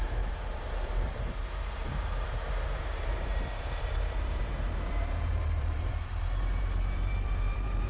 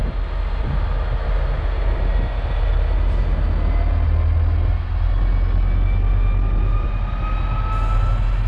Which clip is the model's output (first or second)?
first